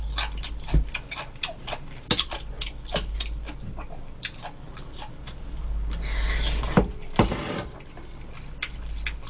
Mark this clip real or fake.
real